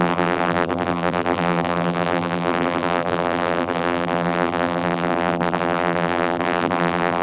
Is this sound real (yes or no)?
no